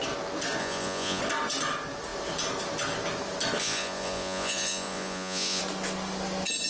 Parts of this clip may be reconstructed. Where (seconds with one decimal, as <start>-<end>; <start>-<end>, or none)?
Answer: 0.6-1.2; 3.6-5.6